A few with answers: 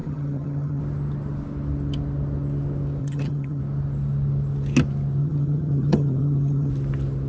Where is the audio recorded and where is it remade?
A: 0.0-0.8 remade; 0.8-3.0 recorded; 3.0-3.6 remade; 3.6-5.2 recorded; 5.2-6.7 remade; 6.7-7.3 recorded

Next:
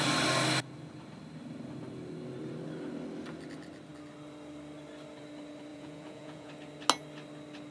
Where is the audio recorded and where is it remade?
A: 0.0-5.7 recorded; 5.7-6.5 remade; 6.5-7.7 recorded

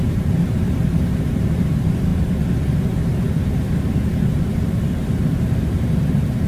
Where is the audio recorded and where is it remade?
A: 0.0-2.1 remade; 2.1-3.2 recorded; 3.2-6.5 remade